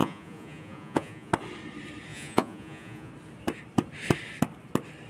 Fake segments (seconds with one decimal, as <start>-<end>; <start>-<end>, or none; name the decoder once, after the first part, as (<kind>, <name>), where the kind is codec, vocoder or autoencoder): 0.0-1.3 (vocoder, Vocos); 2.1-3.1